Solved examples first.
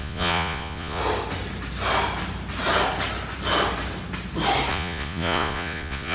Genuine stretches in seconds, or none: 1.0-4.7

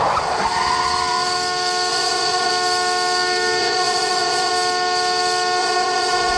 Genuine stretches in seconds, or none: 0.0-1.9; 2.5-3.6; 4.5-5.6